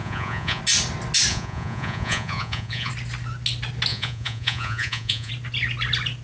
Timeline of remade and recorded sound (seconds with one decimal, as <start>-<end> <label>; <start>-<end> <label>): 0.0-0.6 remade; 0.6-1.3 recorded; 1.3-2.9 remade; 2.9-3.9 recorded; 3.9-5.3 remade; 5.3-6.2 recorded